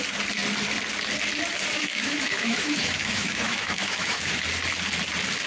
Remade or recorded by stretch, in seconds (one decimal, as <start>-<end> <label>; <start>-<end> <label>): 0.0-1.8 recorded; 1.8-4.4 remade; 4.4-5.5 recorded